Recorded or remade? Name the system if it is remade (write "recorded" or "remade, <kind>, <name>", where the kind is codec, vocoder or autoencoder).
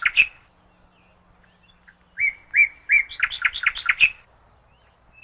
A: recorded